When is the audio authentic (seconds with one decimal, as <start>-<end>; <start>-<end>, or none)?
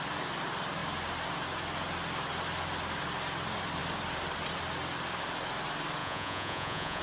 0.0-6.0